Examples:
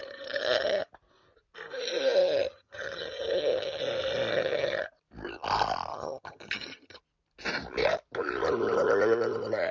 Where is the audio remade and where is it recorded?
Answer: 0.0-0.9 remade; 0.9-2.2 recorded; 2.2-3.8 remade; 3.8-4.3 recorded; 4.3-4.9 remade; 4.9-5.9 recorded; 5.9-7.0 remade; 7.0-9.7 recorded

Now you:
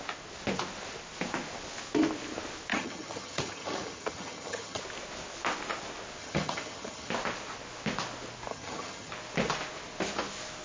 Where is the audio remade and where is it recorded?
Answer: 0.0-2.7 recorded; 2.7-4.8 remade; 4.8-6.2 recorded; 6.2-7.1 remade; 7.1-8.5 recorded; 8.5-9.1 remade; 9.1-10.6 recorded